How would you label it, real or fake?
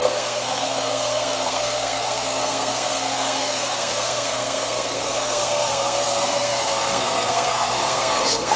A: fake